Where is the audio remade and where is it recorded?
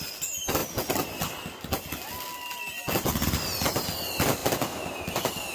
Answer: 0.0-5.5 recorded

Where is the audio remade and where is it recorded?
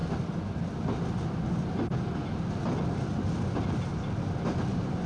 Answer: 0.0-5.1 recorded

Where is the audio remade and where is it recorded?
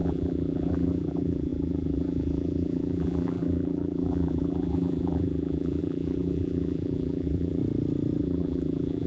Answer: 0.0-7.6 remade; 7.6-8.2 recorded; 8.2-9.1 remade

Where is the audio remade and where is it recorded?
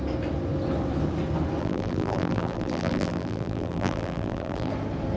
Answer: 0.0-1.6 recorded; 1.6-4.7 remade; 4.7-5.2 recorded